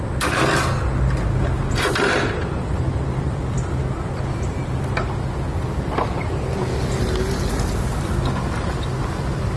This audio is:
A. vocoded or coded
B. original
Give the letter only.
B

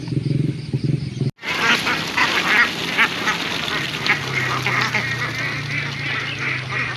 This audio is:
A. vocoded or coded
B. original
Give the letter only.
B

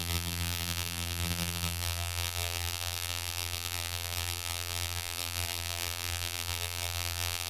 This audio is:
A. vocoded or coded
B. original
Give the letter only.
A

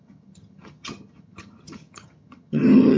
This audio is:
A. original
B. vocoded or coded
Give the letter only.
B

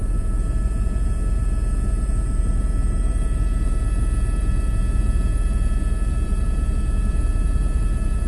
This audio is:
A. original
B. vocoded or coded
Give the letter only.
B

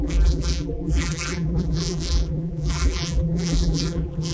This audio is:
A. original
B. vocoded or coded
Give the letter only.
B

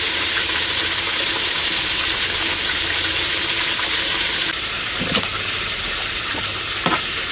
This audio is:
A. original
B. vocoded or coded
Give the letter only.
B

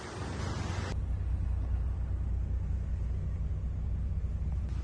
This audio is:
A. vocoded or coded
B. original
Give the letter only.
B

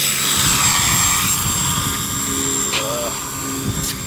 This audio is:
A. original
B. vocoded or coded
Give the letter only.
A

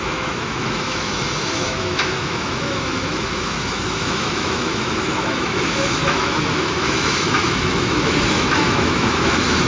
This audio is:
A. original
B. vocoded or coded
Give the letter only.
B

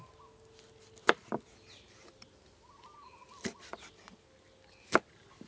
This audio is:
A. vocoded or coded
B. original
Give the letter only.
B